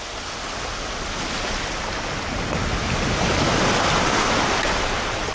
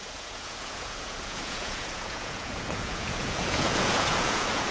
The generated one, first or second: second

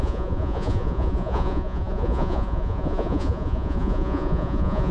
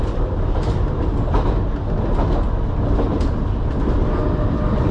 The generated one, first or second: first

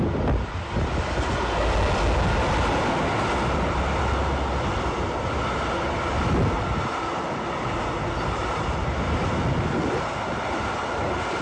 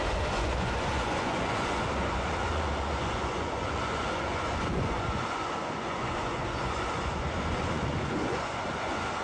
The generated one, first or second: second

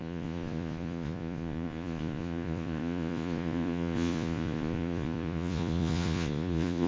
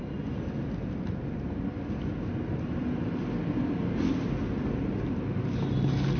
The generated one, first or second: first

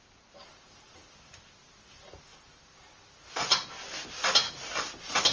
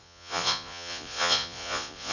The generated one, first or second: second